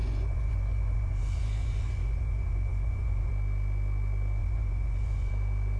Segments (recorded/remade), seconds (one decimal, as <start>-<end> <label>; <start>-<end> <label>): 0.0-3.3 remade; 3.3-4.4 recorded; 4.4-5.3 remade; 5.3-5.8 recorded